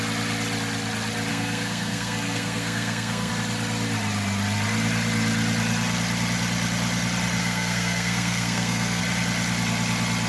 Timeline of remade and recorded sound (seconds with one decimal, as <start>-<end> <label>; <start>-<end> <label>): 0.0-1.3 recorded; 1.3-3.3 remade; 3.3-7.4 recorded; 7.4-9.0 remade; 9.0-10.3 recorded